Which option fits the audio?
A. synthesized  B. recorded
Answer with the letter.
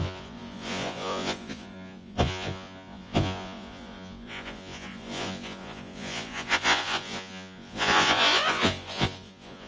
A